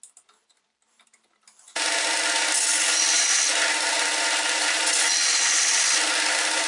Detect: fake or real real